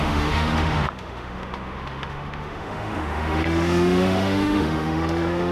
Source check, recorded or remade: remade